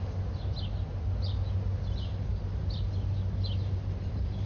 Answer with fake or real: real